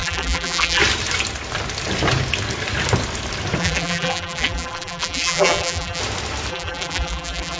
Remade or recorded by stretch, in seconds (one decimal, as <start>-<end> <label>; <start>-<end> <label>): 0.0-0.8 remade; 0.8-3.6 recorded; 3.6-6.0 remade; 6.0-6.5 recorded; 6.5-7.6 remade